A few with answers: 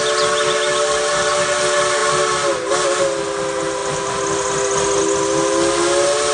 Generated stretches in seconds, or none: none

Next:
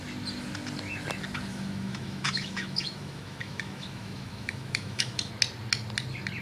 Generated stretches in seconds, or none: 1.5-5.3 (autoencoder, DAC-VAE)

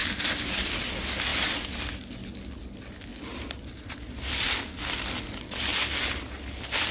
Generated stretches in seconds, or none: none

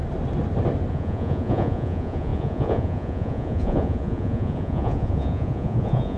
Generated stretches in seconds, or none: 0.9-6.2 (vocoder, Vocos)

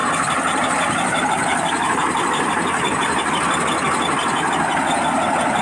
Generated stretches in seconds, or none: 0.0-3.3 (vocoder, BigVGAN v2)

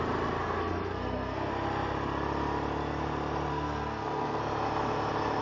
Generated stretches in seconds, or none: 0.4-1.5 (codec, SNAC); 3.5-4.4

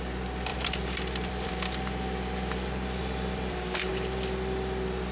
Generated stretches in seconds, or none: 0.5-1.5 (vocoder, BigVGAN v2); 3.0-3.9

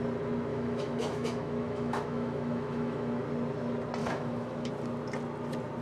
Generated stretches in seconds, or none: 0.5-3.2 (autoencoder, DAC-VAE); 4.0-4.7